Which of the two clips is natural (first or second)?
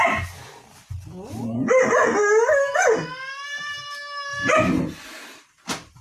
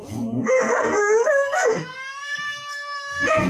first